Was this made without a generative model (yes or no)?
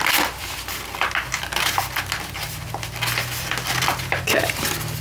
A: yes